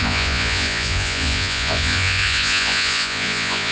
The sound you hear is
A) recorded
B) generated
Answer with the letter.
B